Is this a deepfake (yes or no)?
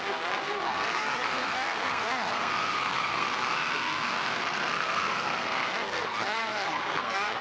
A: yes